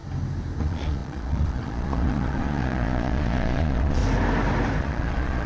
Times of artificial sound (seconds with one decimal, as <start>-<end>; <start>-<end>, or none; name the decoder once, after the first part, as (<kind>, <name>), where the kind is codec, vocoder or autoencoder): 0.6-4.0 (vocoder, Vocos); 4.8-5.5